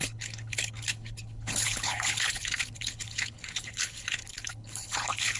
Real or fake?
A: fake